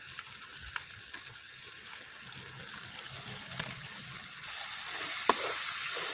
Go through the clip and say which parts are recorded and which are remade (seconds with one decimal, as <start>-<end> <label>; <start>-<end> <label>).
0.0-6.1 recorded